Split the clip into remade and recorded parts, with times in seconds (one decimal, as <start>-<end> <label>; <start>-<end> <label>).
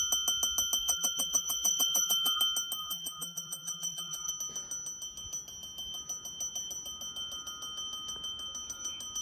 0.0-0.8 recorded; 0.8-2.4 remade; 2.4-2.8 recorded; 2.8-4.3 remade; 4.3-9.2 recorded